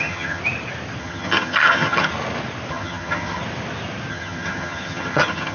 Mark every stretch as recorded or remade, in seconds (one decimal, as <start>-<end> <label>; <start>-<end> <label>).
0.0-0.4 remade; 0.4-1.0 recorded; 1.0-2.1 remade; 2.1-2.7 recorded; 2.7-3.4 remade; 3.4-4.1 recorded; 4.1-5.5 remade